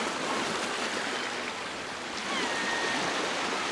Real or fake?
real